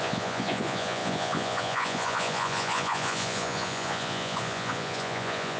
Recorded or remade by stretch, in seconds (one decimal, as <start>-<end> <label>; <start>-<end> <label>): 0.0-5.6 remade